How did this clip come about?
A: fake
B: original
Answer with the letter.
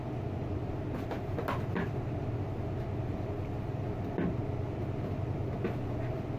B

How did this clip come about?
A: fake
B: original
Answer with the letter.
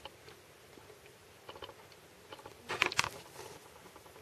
B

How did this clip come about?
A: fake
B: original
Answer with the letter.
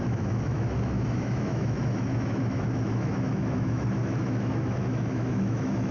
A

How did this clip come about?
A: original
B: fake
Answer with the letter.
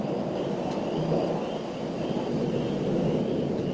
A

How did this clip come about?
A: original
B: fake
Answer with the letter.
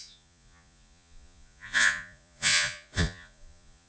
B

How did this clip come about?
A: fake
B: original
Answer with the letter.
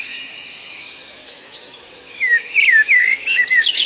A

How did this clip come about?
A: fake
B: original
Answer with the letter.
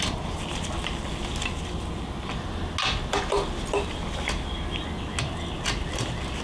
B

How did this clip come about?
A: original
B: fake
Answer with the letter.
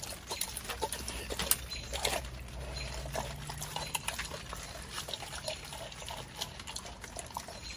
A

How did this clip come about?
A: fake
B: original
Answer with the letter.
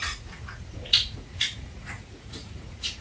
A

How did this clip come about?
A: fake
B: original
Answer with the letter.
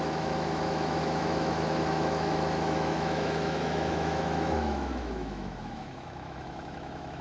A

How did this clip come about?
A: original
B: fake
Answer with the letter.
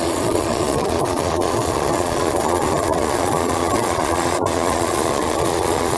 B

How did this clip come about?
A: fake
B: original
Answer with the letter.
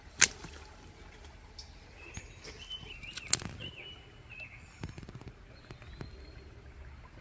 B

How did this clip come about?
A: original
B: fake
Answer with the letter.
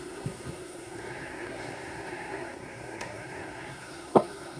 B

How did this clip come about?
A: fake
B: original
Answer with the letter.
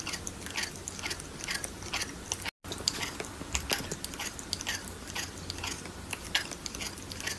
B